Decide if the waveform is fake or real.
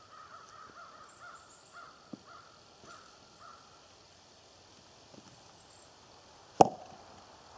real